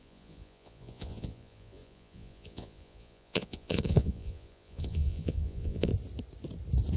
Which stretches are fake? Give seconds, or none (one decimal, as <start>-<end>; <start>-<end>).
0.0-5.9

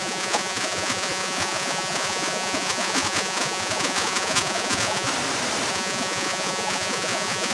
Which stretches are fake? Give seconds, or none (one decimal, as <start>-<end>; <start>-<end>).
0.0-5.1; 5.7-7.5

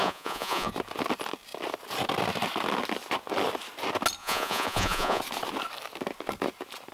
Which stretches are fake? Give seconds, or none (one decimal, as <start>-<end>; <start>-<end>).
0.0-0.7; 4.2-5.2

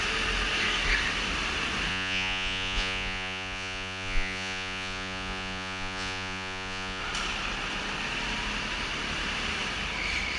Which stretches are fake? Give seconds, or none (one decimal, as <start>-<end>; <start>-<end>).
1.9-7.0

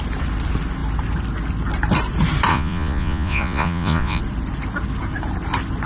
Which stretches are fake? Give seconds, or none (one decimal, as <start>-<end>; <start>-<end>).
2.5-4.2

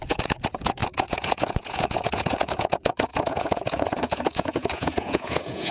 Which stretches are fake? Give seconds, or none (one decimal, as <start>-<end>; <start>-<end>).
0.0-5.7

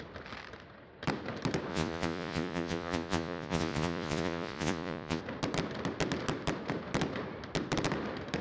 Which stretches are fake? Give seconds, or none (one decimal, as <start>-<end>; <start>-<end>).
1.7-5.2

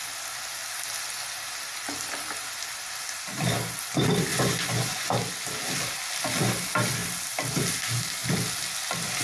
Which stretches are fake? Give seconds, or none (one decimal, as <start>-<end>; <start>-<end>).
4.3-5.1